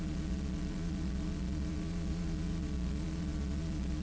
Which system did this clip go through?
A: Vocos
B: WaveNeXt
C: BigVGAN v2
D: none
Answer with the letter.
A